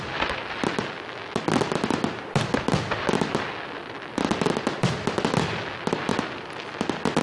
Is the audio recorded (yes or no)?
yes